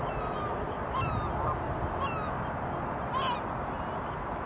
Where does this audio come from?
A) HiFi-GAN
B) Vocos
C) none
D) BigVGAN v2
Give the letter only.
C